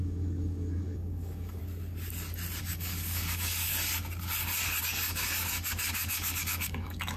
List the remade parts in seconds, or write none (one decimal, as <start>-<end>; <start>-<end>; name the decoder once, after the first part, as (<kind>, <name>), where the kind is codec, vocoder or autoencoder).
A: 0.0-1.6 (codec, DAC); 2.6-3.7; 4.8-7.2